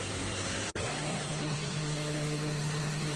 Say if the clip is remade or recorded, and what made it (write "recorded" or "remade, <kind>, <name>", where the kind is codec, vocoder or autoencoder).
remade, codec, SNAC